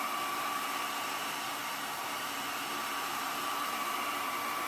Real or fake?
fake